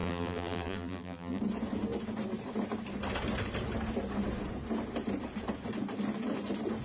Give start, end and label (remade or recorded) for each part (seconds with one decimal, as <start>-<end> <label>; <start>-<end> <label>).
0.0-1.4 remade; 1.4-6.8 recorded

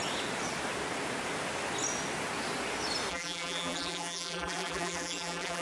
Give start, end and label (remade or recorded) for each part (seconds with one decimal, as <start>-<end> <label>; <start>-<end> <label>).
0.0-3.1 recorded; 3.1-5.6 remade